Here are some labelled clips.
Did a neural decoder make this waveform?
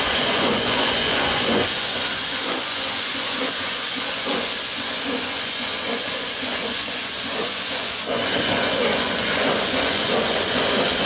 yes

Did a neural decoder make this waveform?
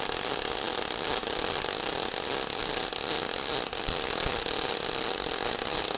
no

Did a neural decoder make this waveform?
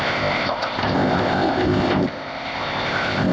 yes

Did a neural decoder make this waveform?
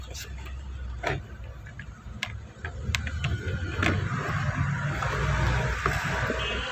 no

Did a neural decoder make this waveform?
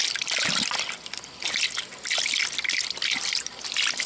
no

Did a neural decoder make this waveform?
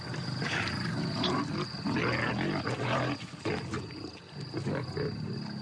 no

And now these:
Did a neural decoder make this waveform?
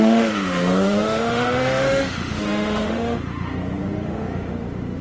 yes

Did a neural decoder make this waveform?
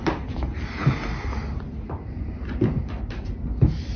no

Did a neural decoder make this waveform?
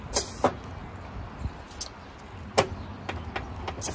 no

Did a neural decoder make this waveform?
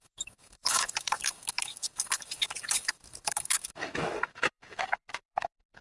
yes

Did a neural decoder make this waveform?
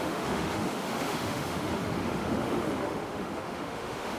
yes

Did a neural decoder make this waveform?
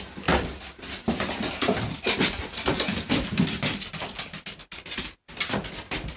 no